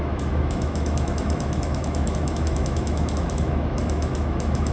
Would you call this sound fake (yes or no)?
yes